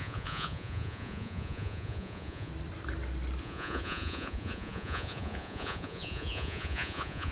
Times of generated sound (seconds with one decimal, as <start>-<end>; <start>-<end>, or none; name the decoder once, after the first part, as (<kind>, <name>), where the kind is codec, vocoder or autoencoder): 0.0-2.5 (vocoder, Vocos); 3.4-7.3